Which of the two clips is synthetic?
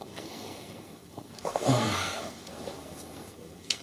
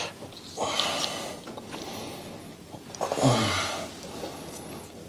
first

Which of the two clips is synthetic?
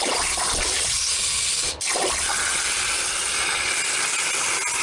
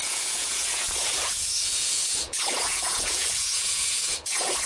second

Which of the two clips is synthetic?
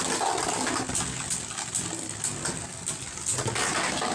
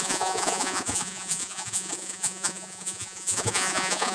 second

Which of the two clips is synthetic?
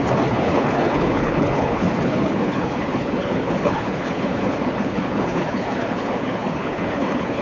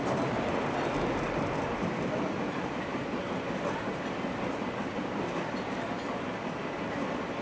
first